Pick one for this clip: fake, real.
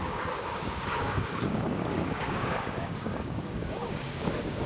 fake